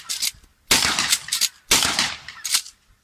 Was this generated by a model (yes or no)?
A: no